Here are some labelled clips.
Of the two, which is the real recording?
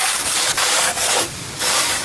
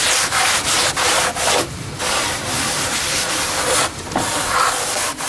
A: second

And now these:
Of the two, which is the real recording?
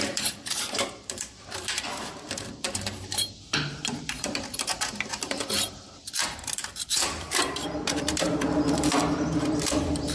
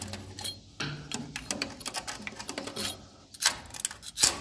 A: second